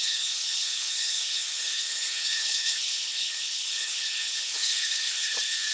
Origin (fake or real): fake